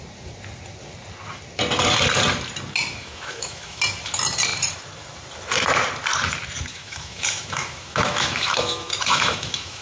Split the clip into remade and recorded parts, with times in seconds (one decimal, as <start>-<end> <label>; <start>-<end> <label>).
0.0-3.0 recorded; 3.0-3.8 remade; 3.8-6.7 recorded; 6.7-9.8 remade